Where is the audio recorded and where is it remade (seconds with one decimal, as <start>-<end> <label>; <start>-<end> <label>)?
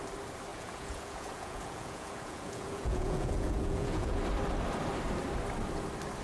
0.0-0.5 recorded; 0.5-4.2 remade; 4.2-6.2 recorded